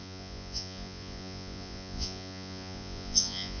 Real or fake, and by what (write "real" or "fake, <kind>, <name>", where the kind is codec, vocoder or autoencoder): fake, vocoder, Vocos